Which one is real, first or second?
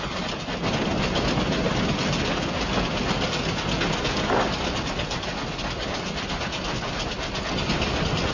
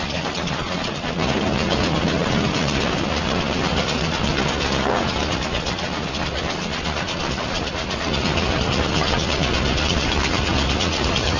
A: first